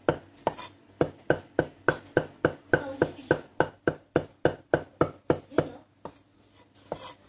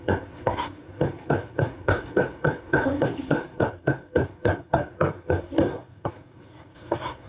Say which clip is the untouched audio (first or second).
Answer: first